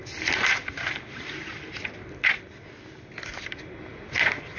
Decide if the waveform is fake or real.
real